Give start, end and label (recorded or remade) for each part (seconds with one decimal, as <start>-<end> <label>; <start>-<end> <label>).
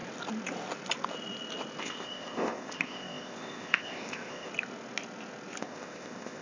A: 0.0-1.8 recorded; 1.8-4.5 remade; 4.5-5.6 recorded; 5.6-6.4 remade